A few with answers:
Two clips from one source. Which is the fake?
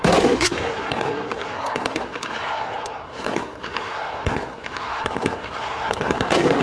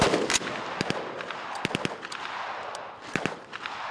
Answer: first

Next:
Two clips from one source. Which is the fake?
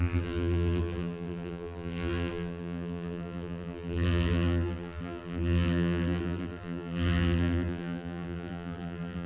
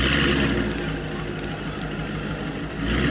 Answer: first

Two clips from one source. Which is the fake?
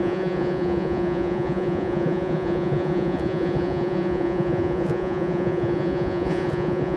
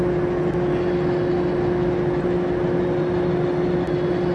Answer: first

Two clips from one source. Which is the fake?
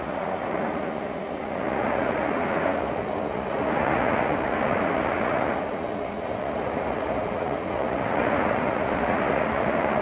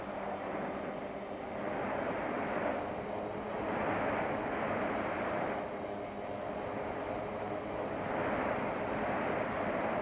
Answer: first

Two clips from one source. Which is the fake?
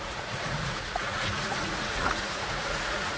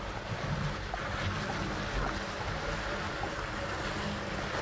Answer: first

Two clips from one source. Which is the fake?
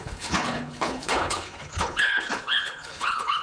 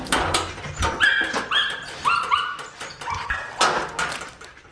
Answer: first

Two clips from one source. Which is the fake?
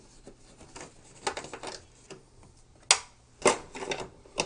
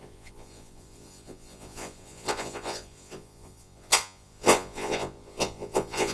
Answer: second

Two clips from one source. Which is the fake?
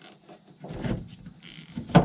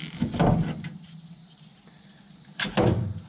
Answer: first